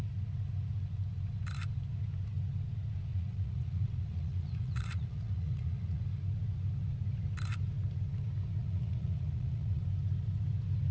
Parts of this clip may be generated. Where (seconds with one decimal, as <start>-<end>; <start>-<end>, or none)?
3.1-6.0; 8.6-9.8

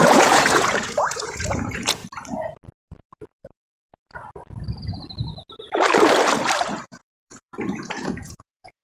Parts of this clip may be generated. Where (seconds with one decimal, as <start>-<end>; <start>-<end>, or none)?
0.0-2.0; 6.8-8.8

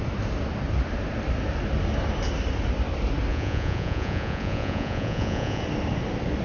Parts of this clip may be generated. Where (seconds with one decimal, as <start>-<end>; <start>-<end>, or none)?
3.3-5.6

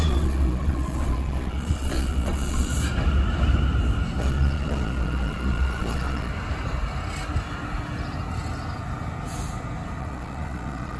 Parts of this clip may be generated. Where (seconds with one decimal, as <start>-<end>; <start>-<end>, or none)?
0.0-2.7; 4.2-6.3; 10.0-11.0